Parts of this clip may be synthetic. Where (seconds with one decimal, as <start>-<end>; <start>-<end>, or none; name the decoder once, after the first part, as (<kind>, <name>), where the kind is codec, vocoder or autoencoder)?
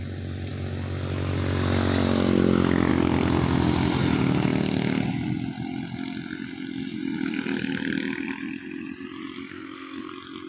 9.5-10.1 (codec, SNAC)